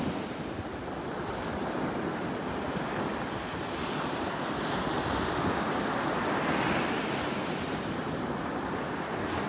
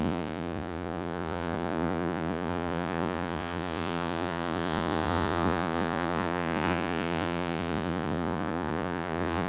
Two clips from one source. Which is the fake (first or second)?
second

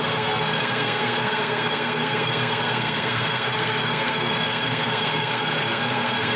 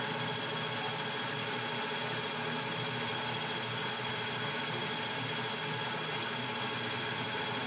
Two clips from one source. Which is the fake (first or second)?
first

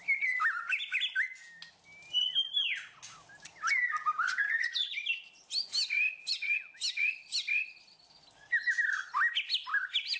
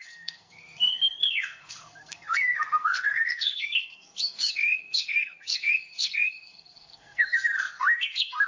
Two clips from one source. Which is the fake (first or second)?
second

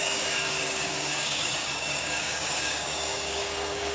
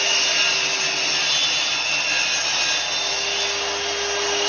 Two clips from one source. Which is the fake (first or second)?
first